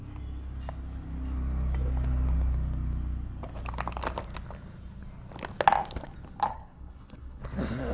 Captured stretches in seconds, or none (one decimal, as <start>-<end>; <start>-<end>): 0.0-6.5; 7.4-7.9